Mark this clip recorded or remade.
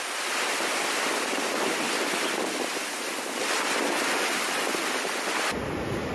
recorded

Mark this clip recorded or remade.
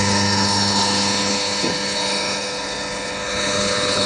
remade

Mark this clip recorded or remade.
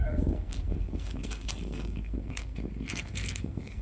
remade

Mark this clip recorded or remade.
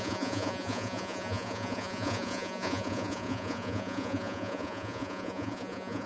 remade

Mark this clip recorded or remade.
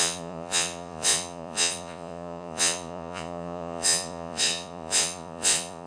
remade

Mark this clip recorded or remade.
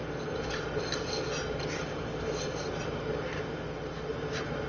recorded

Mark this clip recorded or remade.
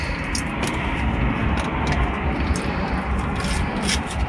recorded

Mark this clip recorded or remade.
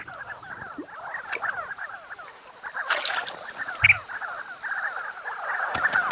recorded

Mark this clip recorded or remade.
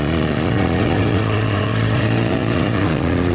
remade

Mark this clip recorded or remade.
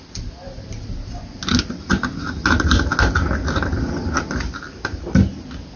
recorded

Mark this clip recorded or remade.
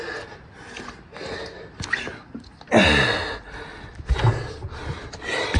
recorded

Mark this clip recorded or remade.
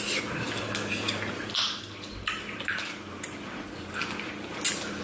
recorded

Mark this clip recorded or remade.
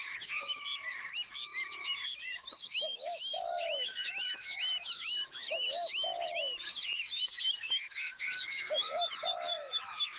remade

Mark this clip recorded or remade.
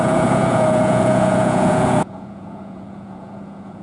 remade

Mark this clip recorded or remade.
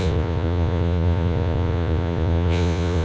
remade